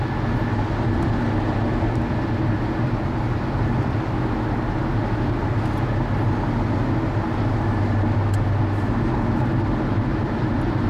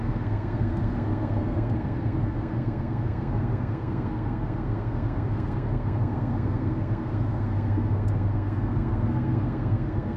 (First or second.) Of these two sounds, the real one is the first